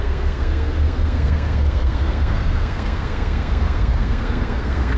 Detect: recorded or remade remade